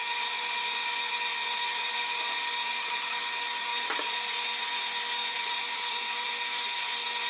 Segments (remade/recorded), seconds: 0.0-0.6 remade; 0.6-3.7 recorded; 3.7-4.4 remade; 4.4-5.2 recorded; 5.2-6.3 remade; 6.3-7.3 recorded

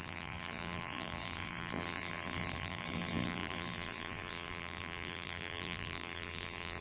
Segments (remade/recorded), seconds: 0.0-6.8 remade

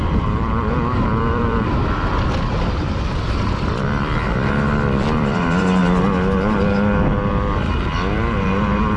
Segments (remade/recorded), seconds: 0.0-4.4 remade; 4.4-5.1 recorded; 5.1-5.8 remade; 5.8-8.6 recorded; 8.6-9.0 remade

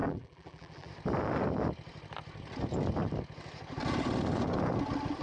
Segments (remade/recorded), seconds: 0.0-0.9 remade; 0.9-5.2 recorded

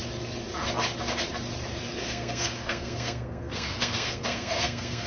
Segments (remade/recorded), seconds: 0.0-1.9 recorded; 1.9-5.1 remade

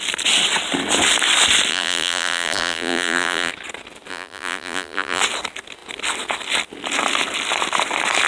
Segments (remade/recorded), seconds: 0.0-1.7 recorded; 1.7-3.5 remade; 3.5-4.1 recorded; 4.1-5.2 remade; 5.2-8.3 recorded

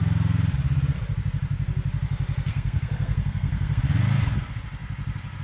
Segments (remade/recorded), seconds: 0.0-2.5 recorded; 2.5-3.8 remade; 3.8-5.4 recorded

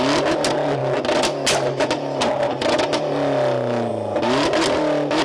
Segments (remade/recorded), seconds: 0.0-5.2 recorded